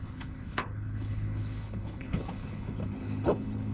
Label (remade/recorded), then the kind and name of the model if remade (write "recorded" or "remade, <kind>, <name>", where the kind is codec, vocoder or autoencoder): remade, codec, HILCodec